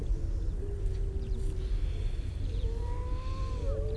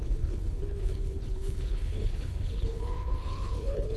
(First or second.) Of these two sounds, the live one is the first